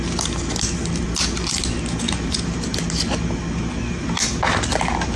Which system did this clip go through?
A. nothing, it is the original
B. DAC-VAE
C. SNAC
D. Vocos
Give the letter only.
A